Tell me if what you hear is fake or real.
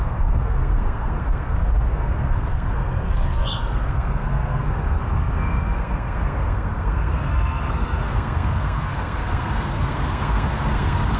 fake